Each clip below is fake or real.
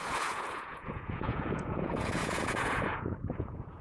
fake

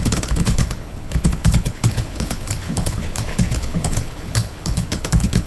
fake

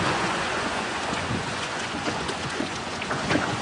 fake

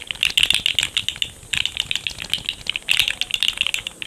real